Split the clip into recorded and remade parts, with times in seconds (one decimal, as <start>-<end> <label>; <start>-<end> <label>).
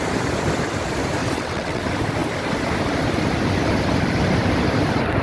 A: 0.0-1.2 recorded; 1.2-1.8 remade; 1.8-5.2 recorded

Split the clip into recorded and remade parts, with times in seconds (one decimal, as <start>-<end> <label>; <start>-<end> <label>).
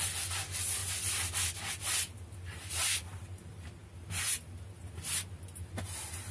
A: 0.0-6.3 recorded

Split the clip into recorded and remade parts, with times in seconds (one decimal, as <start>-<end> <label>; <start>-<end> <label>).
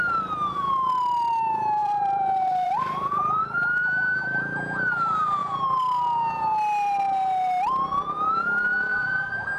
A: 0.0-1.8 recorded; 1.8-3.4 remade; 3.4-8.9 recorded; 8.9-9.6 remade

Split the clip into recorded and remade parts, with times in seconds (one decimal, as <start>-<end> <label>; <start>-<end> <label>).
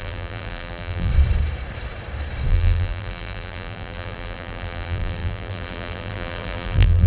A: 0.0-1.1 remade; 1.1-2.5 recorded; 2.5-7.1 remade